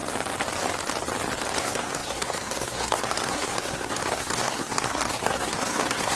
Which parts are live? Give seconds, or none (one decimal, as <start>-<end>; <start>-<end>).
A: 0.0-1.6